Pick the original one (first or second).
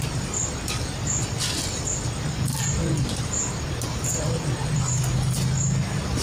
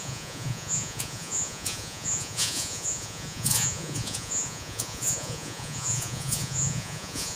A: first